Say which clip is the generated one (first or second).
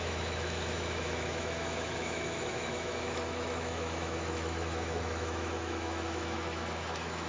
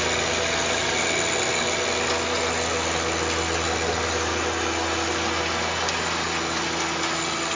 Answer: first